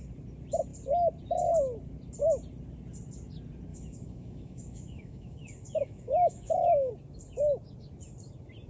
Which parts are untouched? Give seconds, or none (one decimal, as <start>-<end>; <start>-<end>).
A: 0.0-3.7; 6.9-8.7

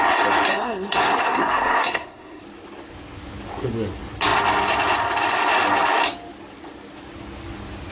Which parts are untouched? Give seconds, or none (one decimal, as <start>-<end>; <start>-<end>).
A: 0.0-0.5; 2.4-7.9

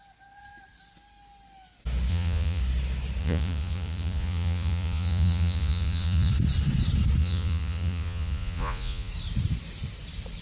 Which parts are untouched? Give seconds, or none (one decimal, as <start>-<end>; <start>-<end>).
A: 0.0-2.1; 2.6-3.2; 6.3-7.2; 9.1-10.4

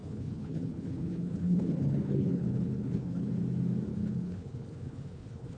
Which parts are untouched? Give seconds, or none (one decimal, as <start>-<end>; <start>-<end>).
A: 3.3-3.9

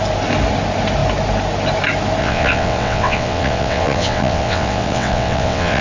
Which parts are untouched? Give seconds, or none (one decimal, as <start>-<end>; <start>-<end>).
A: 0.0-2.2

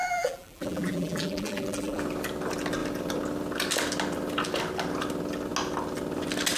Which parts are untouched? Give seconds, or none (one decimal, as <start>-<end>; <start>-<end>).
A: 2.0-6.6